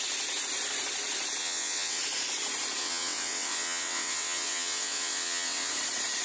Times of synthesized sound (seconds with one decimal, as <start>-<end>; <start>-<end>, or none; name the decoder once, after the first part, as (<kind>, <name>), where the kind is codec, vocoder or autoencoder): 1.4-2.0 (vocoder, WaveNeXt); 2.8-5.7